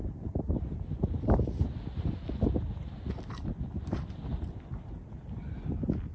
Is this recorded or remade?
recorded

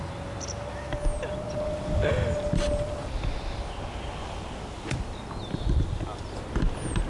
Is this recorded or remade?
recorded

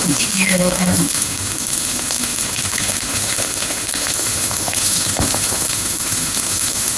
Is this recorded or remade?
remade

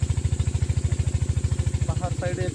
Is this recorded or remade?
recorded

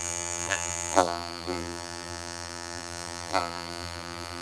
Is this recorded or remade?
remade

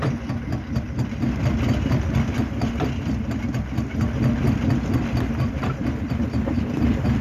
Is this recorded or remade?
recorded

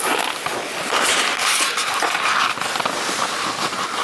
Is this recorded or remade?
recorded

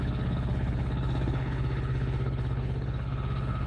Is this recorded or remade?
remade